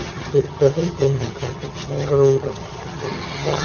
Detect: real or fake fake